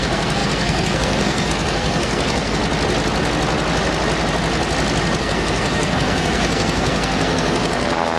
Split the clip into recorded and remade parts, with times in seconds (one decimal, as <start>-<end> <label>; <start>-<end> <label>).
0.0-2.6 remade; 2.6-5.2 recorded; 5.2-8.2 remade